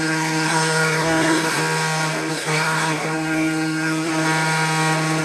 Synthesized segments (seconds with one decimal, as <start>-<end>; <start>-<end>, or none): 0.0-1.6; 2.3-4.1